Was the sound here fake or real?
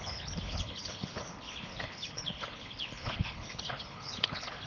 fake